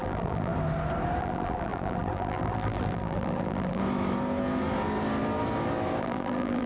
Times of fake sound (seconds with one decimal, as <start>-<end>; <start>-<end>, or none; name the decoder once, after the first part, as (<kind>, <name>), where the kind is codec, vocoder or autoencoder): 0.0-0.5 (vocoder, BigVGAN v2); 1.2-3.8; 6.0-6.7